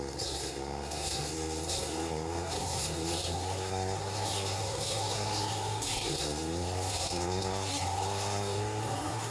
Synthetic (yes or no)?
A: yes